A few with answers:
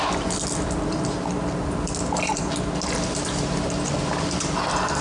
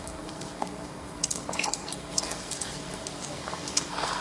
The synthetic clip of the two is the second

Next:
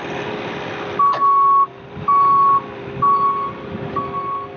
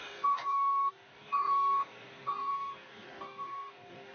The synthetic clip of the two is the second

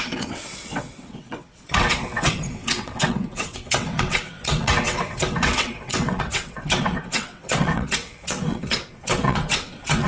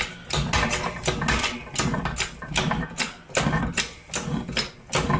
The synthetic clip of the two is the first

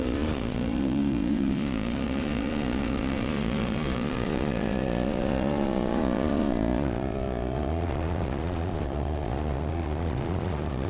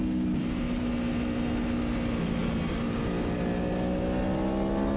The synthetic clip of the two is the first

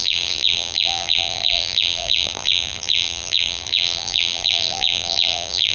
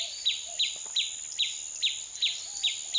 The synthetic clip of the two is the first